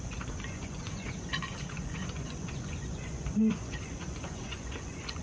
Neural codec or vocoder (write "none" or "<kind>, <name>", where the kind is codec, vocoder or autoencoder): vocoder, Vocos